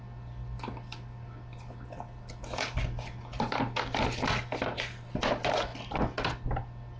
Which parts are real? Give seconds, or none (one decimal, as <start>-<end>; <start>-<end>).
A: 0.0-7.0